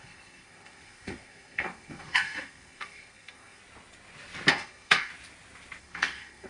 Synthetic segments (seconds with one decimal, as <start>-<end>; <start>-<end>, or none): 0.0-3.6; 4.5-5.1; 5.8-6.5